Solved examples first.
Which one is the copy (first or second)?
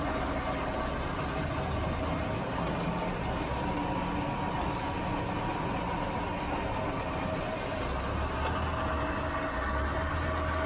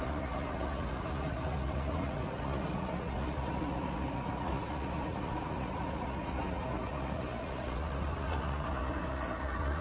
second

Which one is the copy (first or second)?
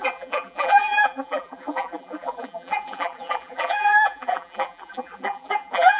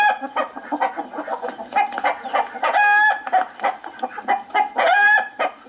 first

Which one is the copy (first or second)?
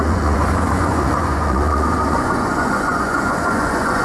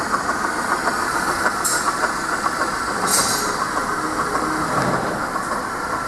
first